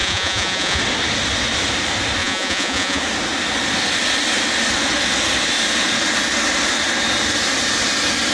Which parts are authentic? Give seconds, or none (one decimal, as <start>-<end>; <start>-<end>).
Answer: 0.8-2.2; 3.0-8.3

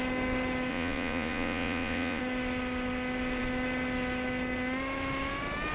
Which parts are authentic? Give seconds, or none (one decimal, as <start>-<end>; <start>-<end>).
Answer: 0.0-0.7; 2.2-5.7

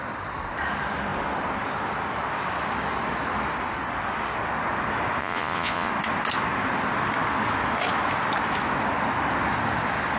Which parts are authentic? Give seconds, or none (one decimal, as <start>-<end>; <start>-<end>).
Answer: 0.0-5.2; 5.9-10.2

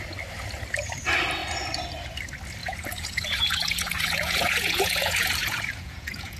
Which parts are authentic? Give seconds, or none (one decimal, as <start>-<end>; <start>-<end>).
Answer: 0.0-2.6